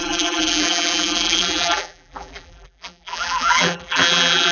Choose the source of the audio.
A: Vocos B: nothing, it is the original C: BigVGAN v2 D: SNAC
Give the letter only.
C